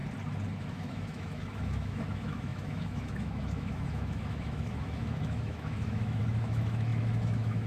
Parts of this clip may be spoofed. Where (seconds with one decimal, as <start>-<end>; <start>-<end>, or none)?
0.6-7.7